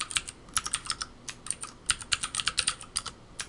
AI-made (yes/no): no